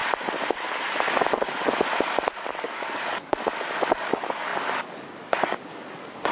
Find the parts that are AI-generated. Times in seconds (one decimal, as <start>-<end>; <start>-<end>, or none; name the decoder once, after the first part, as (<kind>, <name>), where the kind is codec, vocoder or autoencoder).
2.5-3.3 (codec, DAC); 4.0-6.3